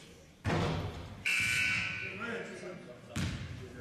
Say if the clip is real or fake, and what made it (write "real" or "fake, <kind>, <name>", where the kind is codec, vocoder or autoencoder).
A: real